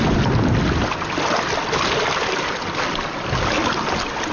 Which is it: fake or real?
real